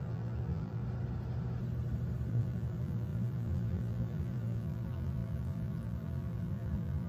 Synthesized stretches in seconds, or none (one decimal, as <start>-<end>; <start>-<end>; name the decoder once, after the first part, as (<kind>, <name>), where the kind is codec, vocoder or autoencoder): 0.0-0.8 (vocoder, BigVGAN v2); 2.3-7.1